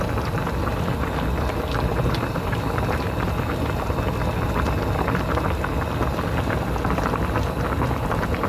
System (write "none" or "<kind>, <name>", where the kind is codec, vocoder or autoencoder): none